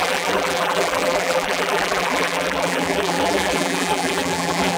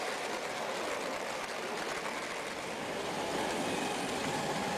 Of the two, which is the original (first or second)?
second